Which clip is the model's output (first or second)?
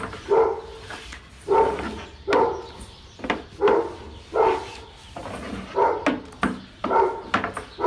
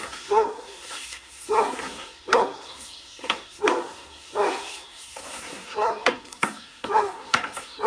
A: second